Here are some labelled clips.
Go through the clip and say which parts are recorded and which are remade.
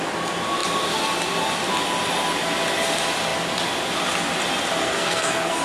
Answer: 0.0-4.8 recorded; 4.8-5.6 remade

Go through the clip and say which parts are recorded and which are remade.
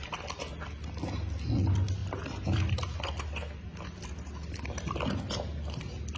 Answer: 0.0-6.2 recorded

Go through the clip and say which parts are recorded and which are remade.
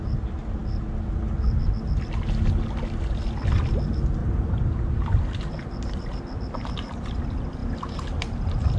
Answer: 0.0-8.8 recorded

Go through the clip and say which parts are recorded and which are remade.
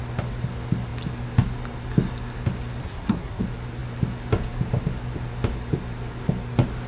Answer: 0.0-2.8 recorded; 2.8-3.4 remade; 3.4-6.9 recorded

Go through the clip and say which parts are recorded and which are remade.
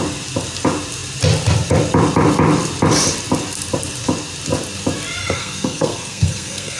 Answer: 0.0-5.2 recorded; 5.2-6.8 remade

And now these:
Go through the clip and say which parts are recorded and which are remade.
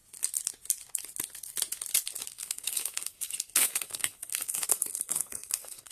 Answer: 0.0-2.3 recorded; 2.3-5.9 remade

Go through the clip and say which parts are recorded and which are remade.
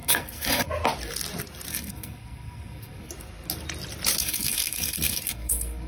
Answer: 0.0-0.7 remade; 0.7-1.7 recorded; 1.7-3.1 remade; 3.1-4.2 recorded; 4.2-5.9 remade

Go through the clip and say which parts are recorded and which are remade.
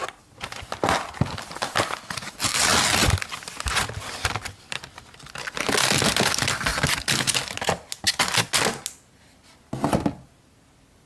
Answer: 0.0-11.1 recorded